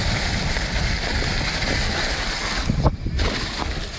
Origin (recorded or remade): recorded